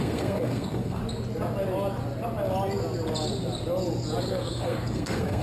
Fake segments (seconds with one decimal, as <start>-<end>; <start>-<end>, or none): 0.0-1.0; 4.2-5.4